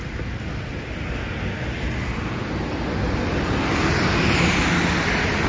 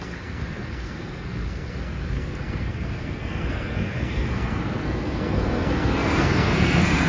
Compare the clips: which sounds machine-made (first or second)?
second